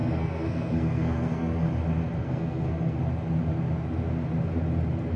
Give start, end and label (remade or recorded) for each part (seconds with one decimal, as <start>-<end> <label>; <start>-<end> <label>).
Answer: 0.0-1.7 remade; 1.7-2.2 recorded; 2.2-3.0 remade; 3.0-5.2 recorded